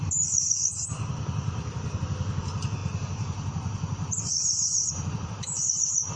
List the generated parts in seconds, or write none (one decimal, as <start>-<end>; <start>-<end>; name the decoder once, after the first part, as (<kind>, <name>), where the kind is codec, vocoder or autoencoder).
2.8-4.9 (vocoder, BigVGAN v2)